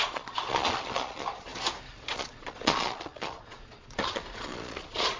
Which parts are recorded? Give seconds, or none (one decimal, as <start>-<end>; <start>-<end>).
1.5-2.1